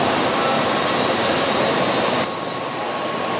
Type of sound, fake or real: real